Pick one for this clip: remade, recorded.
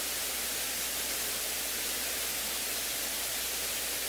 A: recorded